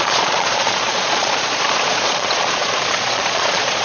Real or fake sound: fake